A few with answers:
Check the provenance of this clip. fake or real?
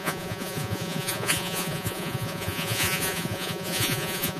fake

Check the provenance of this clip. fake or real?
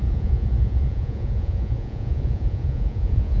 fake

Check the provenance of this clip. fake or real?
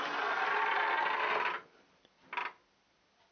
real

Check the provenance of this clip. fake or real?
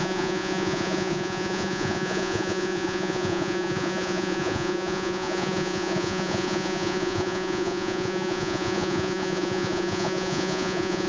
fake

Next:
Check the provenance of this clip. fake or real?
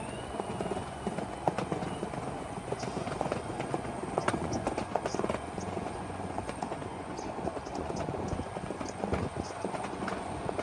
fake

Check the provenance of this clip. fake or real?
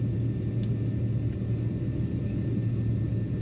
real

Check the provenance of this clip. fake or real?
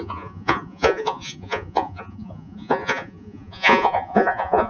fake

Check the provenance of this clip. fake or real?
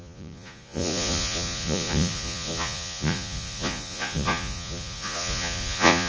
fake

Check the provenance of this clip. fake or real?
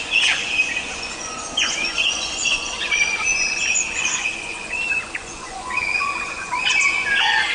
fake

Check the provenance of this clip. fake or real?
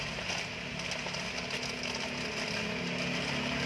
real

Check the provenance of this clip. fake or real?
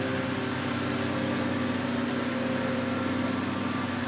real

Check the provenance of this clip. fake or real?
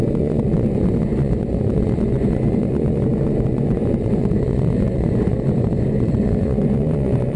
fake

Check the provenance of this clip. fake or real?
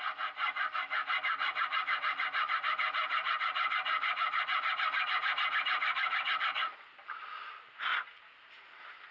real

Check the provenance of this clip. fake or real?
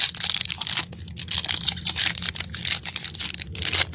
real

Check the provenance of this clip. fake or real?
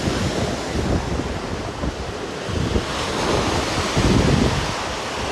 real